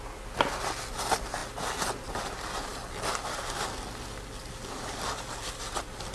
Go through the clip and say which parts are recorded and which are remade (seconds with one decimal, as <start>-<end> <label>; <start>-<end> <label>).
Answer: 0.0-6.1 recorded